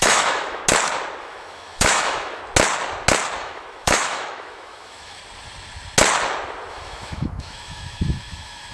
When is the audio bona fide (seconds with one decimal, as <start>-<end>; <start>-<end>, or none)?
0.6-1.2; 2.4-3.4; 5.2-6.7